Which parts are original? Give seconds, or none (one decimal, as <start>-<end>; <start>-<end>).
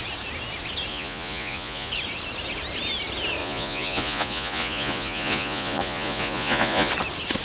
0.0-0.9; 1.9-3.4; 6.9-7.4